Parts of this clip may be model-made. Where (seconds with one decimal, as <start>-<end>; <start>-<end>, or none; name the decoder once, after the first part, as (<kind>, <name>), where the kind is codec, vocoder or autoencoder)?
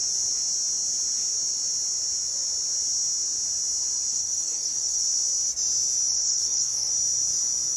4.1-5.0 (codec, SNAC); 6.1-6.9